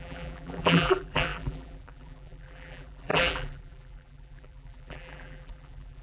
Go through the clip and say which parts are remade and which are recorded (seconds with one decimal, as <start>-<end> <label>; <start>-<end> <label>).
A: 0.0-6.0 remade